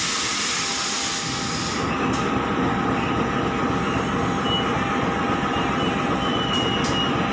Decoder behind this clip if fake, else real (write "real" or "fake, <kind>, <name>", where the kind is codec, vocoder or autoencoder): real